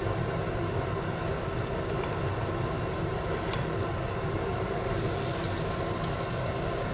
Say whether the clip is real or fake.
real